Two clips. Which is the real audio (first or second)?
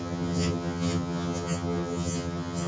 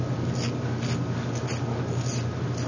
second